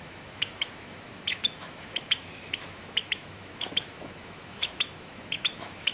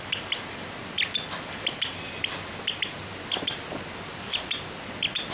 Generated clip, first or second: first